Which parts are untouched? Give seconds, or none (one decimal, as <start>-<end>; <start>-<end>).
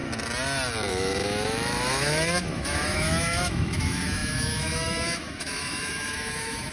0.0-0.9